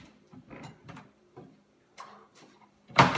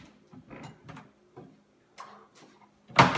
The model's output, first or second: first